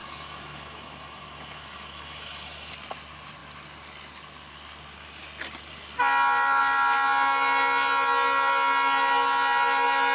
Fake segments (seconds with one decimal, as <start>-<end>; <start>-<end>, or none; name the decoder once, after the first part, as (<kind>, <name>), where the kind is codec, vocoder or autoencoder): 0.0-2.7 (autoencoder, DAC-VAE)